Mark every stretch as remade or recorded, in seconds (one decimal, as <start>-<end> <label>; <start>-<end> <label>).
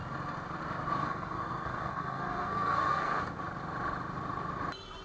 0.0-1.0 recorded; 1.0-3.2 remade; 3.2-5.0 recorded